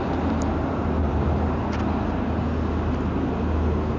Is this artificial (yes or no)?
no